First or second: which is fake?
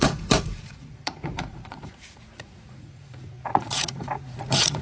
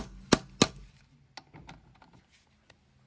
first